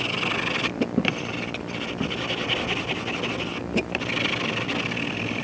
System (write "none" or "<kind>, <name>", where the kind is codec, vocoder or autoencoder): none